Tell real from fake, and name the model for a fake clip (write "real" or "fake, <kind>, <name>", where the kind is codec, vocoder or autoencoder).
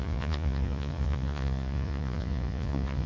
fake, vocoder, Vocos